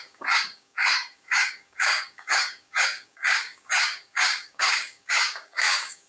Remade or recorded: remade